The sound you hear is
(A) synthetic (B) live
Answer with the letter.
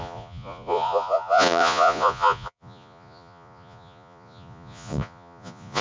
A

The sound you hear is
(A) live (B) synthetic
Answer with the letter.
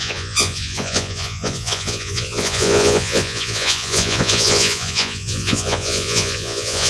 B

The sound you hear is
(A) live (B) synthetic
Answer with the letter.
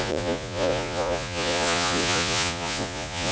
B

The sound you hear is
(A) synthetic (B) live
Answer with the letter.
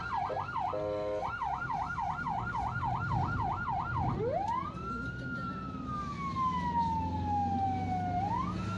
B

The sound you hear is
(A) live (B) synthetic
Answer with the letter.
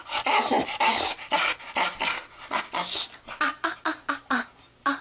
A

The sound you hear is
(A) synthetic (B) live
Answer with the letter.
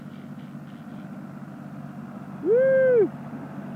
B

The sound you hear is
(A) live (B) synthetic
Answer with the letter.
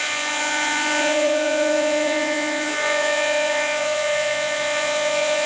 B